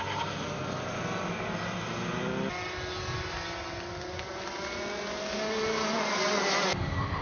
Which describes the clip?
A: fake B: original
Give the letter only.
B